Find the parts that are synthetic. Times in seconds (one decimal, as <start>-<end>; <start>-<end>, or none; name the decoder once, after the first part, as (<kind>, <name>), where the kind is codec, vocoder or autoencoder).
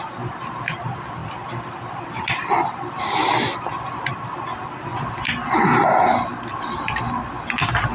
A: 1.2-3.3 (vocoder, BigVGAN v2); 4.9-5.5